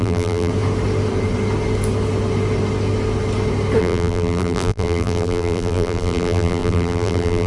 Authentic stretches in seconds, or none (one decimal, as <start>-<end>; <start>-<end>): 0.5-3.8